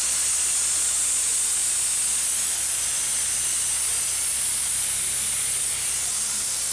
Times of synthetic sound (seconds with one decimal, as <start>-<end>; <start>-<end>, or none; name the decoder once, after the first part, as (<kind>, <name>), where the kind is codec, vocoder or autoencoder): none